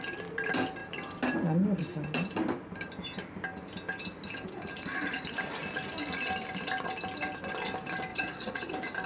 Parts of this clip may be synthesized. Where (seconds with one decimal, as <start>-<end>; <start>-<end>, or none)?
8.1-8.7

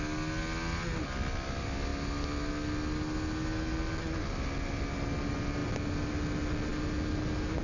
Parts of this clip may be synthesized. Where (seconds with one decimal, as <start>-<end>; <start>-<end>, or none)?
none

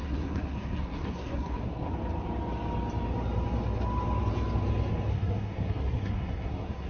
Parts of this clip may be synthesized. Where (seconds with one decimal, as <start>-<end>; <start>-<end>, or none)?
0.0-1.9; 5.1-6.9

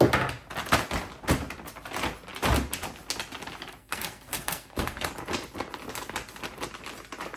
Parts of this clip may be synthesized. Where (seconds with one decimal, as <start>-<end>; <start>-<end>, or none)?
3.8-5.1

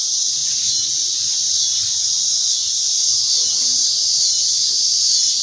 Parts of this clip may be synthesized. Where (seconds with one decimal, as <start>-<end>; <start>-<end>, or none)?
none

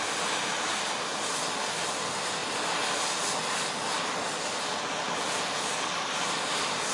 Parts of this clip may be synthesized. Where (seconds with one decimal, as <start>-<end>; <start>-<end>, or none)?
none

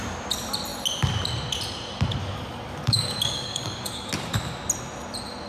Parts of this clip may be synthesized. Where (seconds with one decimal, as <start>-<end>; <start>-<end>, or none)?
2.2-4.1